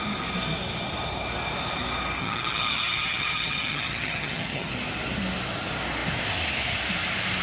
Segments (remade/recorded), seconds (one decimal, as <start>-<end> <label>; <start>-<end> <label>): 0.0-2.2 recorded; 2.2-4.7 remade; 4.7-7.4 recorded